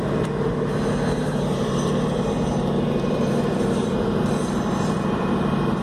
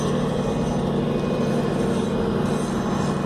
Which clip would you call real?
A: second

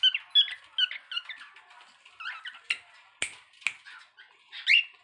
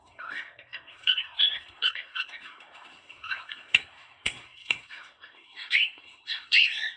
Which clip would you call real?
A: first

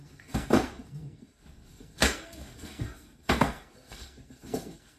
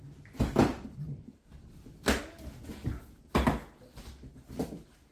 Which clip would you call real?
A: second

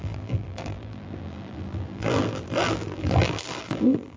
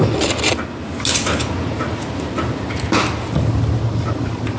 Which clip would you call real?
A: second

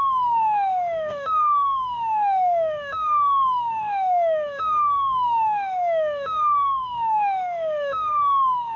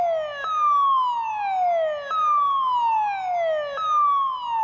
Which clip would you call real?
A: second